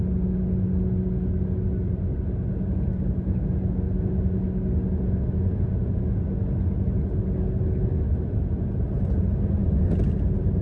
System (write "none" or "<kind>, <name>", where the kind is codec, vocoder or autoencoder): none